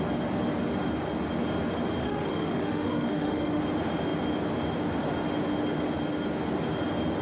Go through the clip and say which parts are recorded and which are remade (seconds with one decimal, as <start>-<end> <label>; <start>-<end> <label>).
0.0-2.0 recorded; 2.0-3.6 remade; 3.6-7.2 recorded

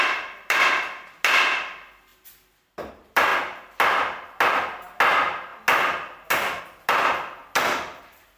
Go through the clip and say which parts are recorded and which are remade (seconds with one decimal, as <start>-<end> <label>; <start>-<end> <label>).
0.0-8.4 recorded

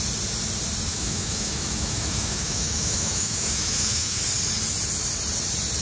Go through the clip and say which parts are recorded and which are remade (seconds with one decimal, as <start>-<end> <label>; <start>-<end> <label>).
0.0-0.9 recorded; 0.9-4.2 remade; 4.2-5.8 recorded

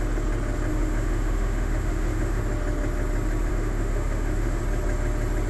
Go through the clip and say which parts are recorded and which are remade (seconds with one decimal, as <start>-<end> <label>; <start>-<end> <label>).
0.0-0.7 recorded; 0.7-2.4 remade; 2.4-3.5 recorded; 3.5-4.6 remade; 4.6-5.5 recorded

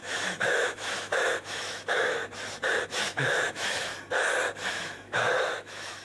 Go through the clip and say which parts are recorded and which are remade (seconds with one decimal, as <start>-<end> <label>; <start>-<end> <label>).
0.0-2.2 remade; 2.2-2.8 recorded; 2.8-3.9 remade; 3.9-4.7 recorded; 4.7-6.0 remade

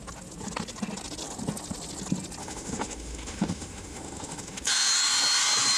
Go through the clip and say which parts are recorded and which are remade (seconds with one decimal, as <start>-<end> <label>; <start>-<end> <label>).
0.0-2.4 recorded; 2.4-4.7 remade; 4.7-5.8 recorded